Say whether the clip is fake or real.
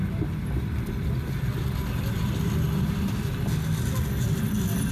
real